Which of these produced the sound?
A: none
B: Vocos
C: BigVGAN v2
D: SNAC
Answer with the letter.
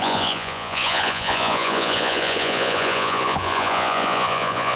B